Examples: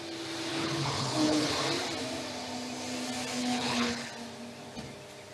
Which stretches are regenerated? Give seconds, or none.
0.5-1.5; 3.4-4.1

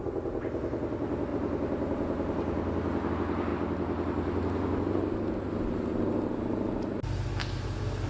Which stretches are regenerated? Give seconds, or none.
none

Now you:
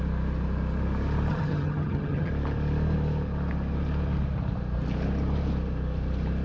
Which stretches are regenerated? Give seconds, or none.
1.3-2.3

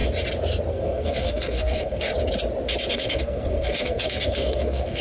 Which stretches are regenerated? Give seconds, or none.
0.7-2.1; 2.9-5.0

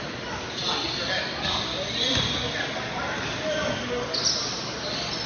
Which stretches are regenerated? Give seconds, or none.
none

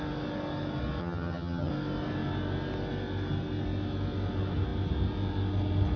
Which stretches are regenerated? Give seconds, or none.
1.0-1.7

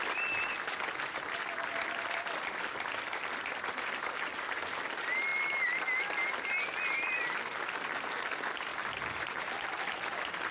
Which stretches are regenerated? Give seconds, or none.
8.7-9.8

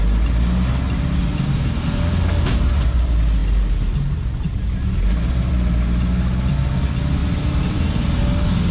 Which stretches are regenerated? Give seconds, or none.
none